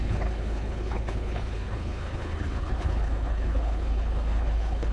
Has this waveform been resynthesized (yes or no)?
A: yes